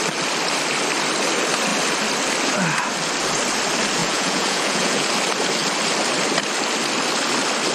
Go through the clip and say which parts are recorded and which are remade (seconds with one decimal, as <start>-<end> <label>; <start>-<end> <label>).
0.0-4.0 recorded; 4.0-5.1 remade; 5.1-7.7 recorded